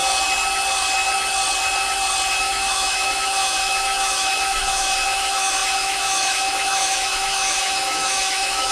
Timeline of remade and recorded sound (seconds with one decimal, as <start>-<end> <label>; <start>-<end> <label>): 0.0-2.4 recorded; 2.4-8.7 remade